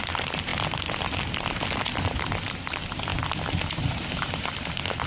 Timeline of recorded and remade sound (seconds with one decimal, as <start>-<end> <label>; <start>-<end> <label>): 0.0-0.5 remade; 0.5-2.2 recorded; 2.2-3.1 remade; 3.1-4.4 recorded; 4.4-5.1 remade